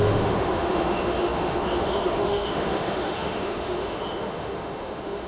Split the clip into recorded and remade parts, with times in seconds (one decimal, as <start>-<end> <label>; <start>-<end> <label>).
0.0-5.3 remade

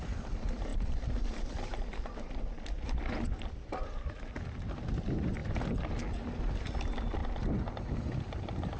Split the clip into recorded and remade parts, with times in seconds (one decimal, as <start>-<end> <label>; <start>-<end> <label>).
0.0-0.7 recorded; 0.7-4.3 remade; 4.3-7.2 recorded; 7.2-7.8 remade; 7.8-8.8 recorded

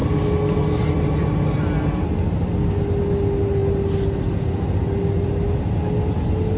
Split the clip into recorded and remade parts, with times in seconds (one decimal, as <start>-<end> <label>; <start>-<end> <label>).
0.0-6.6 recorded

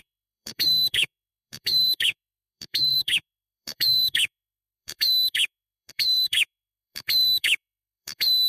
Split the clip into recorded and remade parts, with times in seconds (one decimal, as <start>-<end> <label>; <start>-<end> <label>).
0.0-8.5 remade

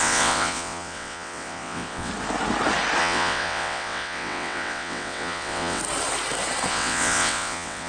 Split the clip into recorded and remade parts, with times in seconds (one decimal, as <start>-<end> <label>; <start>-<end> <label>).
0.0-2.1 remade; 2.1-3.0 recorded; 3.0-5.8 remade; 5.8-6.7 recorded; 6.7-7.9 remade

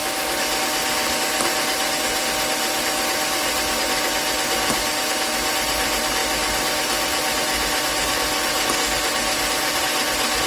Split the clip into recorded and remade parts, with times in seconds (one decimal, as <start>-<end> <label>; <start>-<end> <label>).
0.0-10.5 recorded